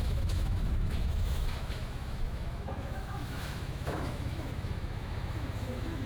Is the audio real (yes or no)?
no